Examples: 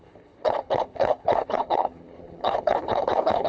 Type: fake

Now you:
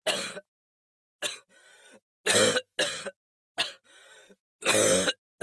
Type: real